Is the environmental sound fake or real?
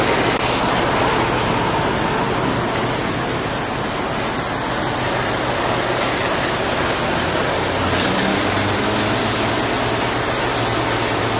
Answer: real